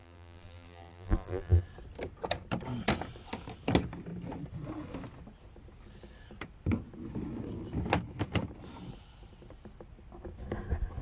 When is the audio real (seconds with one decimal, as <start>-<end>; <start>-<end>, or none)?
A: 1.6-11.0